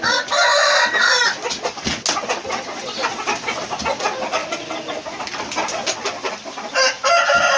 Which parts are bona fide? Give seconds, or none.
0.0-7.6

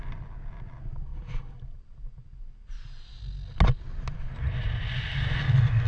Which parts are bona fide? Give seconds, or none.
0.0-5.9